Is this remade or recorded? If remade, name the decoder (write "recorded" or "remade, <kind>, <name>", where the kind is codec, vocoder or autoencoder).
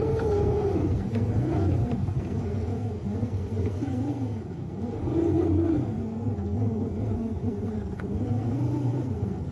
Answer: remade, codec, SNAC